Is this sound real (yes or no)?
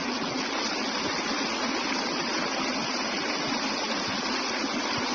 yes